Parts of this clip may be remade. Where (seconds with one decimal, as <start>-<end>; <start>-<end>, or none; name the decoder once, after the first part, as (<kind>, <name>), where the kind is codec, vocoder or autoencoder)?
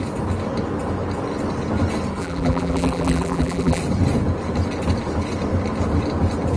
2.2-3.8 (vocoder, BigVGAN v2)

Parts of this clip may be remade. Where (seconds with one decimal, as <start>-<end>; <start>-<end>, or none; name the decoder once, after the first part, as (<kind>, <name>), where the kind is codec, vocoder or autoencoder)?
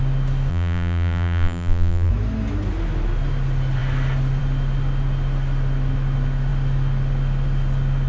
0.5-2.1 (vocoder, BigVGAN v2)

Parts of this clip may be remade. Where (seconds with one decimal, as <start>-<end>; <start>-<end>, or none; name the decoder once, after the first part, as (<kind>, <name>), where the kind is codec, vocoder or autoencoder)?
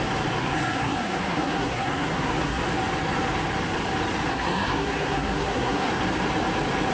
0.4-2.6 (codec, SNAC); 4.3-5.9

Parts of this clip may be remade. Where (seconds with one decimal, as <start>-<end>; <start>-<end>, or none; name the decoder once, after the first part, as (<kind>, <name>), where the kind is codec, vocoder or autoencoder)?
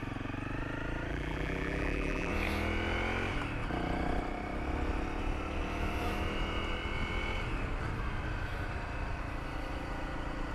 1.1-2.3 (vocoder, BigVGAN v2)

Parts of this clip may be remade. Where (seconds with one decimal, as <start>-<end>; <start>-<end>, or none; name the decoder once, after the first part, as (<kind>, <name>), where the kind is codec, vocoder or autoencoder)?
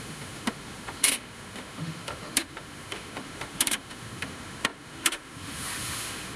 0.0-6.4 (autoencoder, DAC-VAE)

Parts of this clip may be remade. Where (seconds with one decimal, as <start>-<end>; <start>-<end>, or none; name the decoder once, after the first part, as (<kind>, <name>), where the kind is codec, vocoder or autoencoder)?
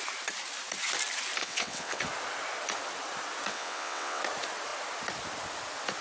1.4-2.0 (vocoder, WaveNeXt); 3.5-4.2